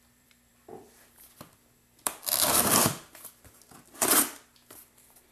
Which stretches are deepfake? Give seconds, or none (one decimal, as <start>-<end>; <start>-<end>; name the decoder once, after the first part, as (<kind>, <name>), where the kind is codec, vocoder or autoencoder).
0.0-5.3 (vocoder, BigVGAN v2)